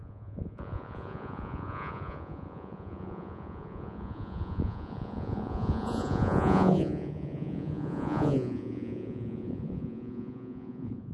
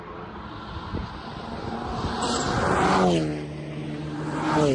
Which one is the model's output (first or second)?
first